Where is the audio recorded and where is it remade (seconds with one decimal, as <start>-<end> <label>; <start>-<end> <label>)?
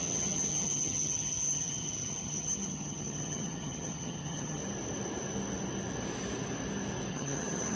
0.0-4.6 remade; 4.6-7.1 recorded; 7.1-7.8 remade